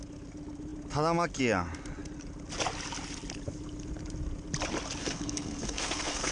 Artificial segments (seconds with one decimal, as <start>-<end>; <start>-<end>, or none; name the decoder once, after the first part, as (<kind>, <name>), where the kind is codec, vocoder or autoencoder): 5.0-6.3 (codec, SNAC)